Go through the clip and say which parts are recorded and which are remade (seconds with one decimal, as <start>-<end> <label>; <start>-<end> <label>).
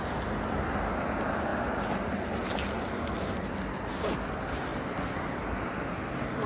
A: 0.0-6.5 recorded